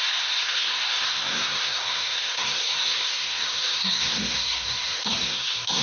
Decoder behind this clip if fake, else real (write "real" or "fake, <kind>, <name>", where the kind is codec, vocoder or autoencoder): fake, codec, SNAC